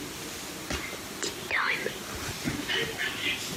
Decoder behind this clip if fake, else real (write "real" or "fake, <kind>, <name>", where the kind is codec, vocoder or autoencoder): real